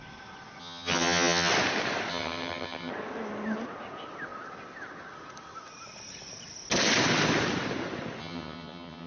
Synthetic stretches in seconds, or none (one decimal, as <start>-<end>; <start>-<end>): 0.6-1.5; 2.1-2.9; 8.2-9.1